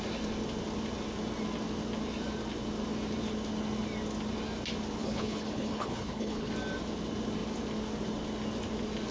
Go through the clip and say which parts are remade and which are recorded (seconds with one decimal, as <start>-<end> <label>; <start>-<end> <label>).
0.0-5.0 recorded; 5.0-6.5 remade; 6.5-9.1 recorded